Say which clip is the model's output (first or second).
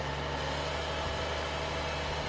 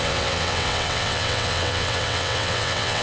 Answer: second